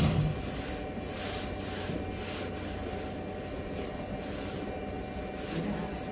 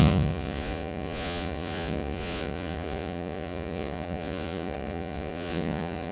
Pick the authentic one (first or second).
first